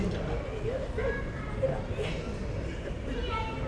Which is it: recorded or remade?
recorded